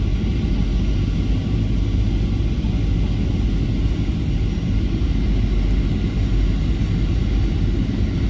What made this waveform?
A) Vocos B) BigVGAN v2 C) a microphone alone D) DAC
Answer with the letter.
C